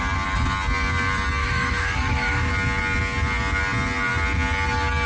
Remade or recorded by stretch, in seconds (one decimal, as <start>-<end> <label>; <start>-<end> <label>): 0.0-1.4 recorded; 1.4-2.5 remade; 2.5-5.1 recorded

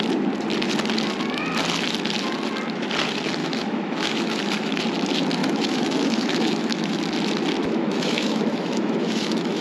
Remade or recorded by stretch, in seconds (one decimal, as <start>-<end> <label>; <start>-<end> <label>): 0.0-3.4 recorded; 3.4-4.8 remade; 4.8-5.4 recorded; 5.4-7.0 remade; 7.0-7.6 recorded; 7.6-9.6 remade

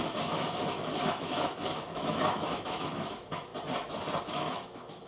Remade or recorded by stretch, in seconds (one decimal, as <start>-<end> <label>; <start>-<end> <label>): 0.0-3.5 remade; 3.5-4.2 recorded; 4.2-5.1 remade

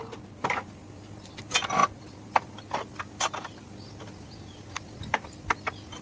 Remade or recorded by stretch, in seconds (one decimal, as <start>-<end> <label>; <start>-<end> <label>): 0.0-6.0 recorded

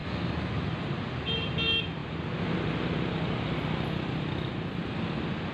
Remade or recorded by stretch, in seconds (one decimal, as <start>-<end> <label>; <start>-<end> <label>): 0.0-0.5 remade; 0.5-5.5 recorded